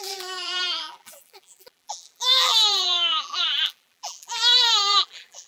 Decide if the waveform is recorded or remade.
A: remade